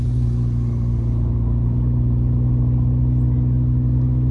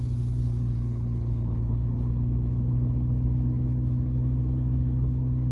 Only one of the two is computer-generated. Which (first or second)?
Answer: second